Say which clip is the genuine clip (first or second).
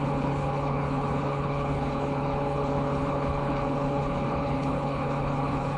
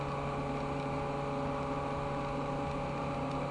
second